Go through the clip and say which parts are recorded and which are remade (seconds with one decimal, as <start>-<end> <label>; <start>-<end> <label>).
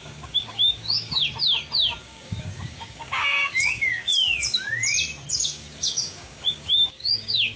0.0-1.2 remade; 1.2-2.0 recorded; 2.0-4.1 remade; 4.1-5.3 recorded; 5.3-7.6 remade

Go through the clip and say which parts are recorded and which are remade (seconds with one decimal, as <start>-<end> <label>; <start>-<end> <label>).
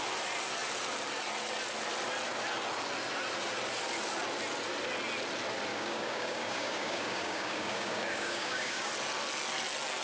0.0-5.7 recorded; 5.7-8.9 remade; 8.9-10.0 recorded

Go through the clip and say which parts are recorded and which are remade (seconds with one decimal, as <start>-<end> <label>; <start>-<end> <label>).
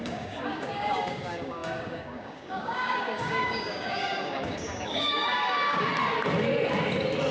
0.0-5.9 remade; 5.9-7.3 recorded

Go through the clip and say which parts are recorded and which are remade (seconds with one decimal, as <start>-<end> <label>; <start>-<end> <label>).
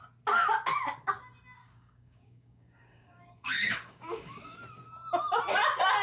0.0-1.6 recorded; 1.6-4.6 remade; 4.6-6.0 recorded